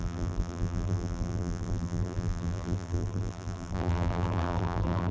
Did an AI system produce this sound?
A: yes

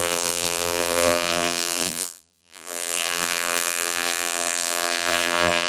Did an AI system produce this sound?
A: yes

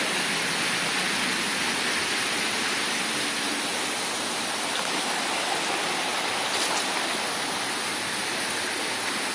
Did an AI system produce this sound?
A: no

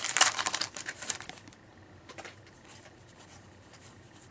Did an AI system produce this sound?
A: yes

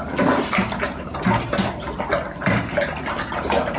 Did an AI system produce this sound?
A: no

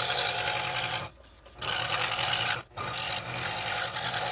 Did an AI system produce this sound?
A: no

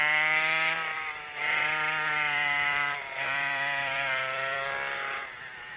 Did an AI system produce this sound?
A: yes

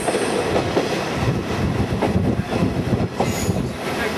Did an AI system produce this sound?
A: no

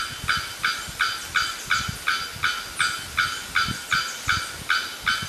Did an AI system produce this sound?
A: no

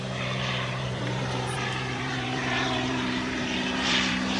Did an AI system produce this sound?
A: yes